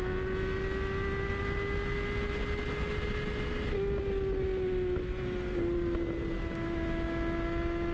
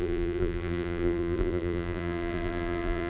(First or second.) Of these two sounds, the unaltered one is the first